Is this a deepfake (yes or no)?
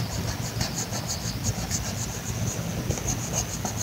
no